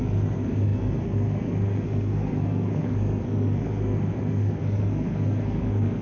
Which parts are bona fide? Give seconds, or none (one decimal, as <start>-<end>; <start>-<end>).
none